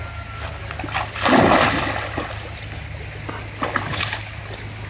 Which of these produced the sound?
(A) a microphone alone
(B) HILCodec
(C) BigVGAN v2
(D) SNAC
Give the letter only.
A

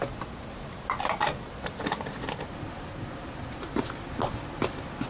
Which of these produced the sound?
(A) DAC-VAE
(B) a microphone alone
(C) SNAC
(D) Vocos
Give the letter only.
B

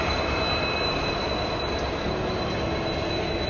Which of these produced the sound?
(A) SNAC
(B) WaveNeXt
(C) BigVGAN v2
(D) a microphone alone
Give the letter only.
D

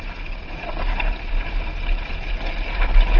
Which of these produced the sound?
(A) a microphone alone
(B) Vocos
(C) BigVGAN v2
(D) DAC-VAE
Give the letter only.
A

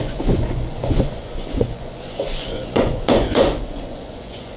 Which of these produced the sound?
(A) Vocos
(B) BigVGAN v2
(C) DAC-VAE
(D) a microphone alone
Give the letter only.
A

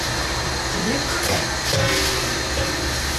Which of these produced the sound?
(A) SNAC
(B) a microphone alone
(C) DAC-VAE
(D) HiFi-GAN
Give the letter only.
B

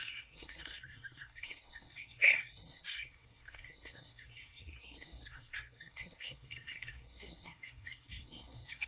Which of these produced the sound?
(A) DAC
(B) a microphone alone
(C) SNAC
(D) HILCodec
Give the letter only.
C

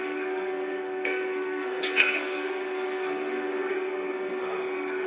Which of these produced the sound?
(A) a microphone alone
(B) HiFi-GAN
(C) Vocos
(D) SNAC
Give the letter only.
D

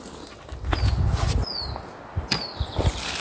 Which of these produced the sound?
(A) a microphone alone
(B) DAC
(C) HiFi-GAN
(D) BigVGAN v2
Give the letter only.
A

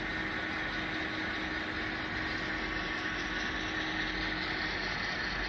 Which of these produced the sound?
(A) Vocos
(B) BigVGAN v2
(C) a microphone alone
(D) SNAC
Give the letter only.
C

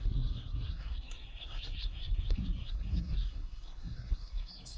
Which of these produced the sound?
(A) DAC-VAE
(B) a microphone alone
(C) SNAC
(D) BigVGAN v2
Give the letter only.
C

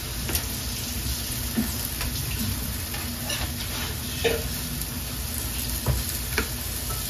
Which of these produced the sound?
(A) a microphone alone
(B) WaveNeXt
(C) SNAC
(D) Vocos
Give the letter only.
A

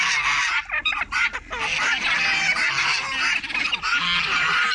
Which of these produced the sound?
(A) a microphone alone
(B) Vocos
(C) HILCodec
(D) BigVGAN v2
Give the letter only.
A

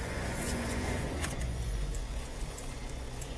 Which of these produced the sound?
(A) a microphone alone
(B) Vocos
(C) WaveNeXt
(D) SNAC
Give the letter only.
B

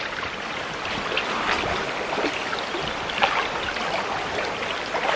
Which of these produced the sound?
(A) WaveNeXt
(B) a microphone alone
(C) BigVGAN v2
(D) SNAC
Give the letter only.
B